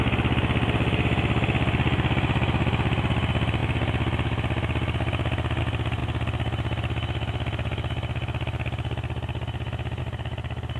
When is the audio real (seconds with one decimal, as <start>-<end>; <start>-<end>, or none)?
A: 0.0-10.8